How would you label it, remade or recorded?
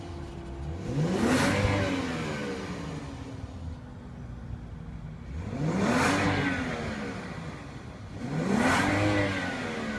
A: recorded